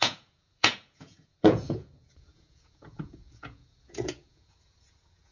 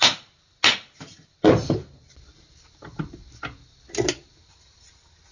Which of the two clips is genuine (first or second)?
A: second